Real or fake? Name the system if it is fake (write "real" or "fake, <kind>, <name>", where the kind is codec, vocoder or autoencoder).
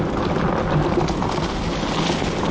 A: real